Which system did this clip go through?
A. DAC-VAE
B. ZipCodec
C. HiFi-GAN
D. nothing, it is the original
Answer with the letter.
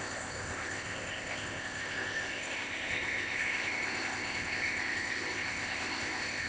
B